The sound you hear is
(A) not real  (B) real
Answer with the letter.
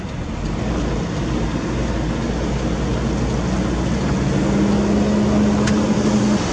B